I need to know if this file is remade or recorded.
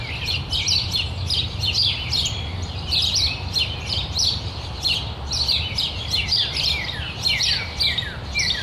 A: remade